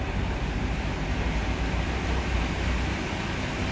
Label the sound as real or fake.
fake